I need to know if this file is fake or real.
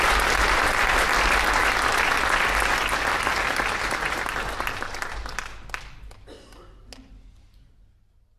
real